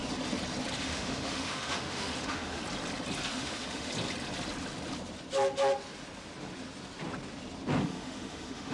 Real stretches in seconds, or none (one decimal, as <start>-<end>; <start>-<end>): 0.0-0.8; 2.6-3.3; 3.9-7.8